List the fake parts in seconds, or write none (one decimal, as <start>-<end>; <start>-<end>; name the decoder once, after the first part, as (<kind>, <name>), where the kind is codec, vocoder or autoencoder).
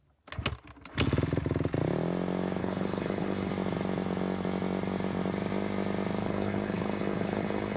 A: 2.6-3.5 (codec, HILCodec); 6.2-7.8